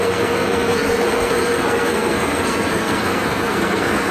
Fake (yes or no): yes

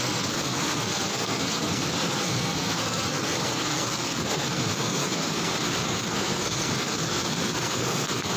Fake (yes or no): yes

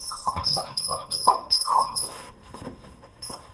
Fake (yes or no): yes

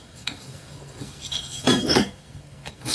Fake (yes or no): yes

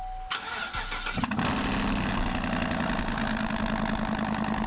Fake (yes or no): no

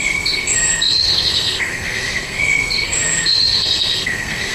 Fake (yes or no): yes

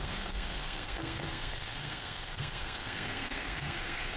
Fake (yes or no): yes